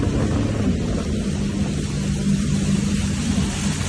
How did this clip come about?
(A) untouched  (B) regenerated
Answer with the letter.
A